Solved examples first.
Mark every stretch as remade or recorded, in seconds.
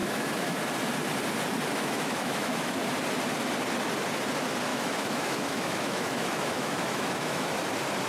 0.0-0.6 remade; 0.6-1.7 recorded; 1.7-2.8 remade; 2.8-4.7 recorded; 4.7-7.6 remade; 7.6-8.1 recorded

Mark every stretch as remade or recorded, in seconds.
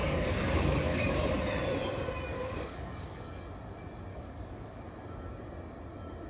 0.0-1.2 remade; 1.2-2.3 recorded; 2.3-3.4 remade; 3.4-4.1 recorded; 4.1-4.8 remade; 4.8-6.3 recorded